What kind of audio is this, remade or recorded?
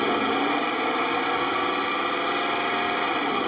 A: recorded